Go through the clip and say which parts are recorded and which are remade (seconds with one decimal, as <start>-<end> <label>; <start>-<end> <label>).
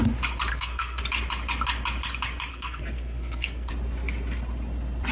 0.0-0.5 recorded; 0.5-1.0 remade; 1.0-2.5 recorded; 2.5-3.7 remade; 3.7-5.1 recorded